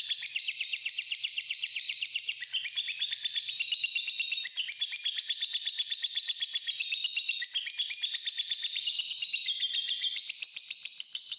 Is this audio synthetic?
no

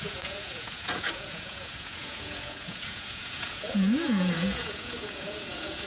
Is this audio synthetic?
yes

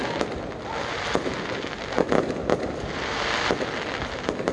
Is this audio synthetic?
no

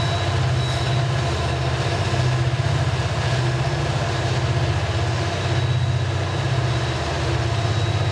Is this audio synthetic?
no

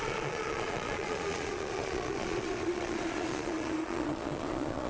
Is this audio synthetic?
yes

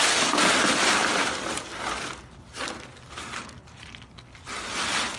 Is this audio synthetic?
no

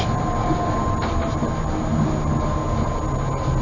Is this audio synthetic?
no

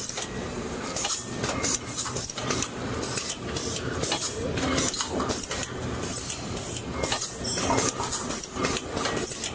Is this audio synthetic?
yes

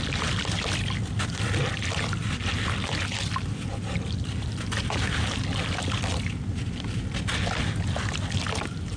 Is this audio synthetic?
no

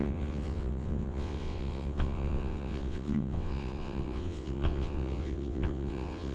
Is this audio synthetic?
yes